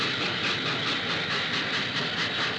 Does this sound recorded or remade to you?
recorded